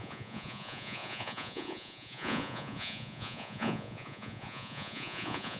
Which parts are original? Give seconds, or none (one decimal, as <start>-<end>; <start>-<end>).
none